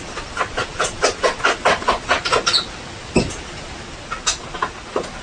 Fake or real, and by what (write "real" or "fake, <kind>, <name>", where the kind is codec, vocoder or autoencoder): real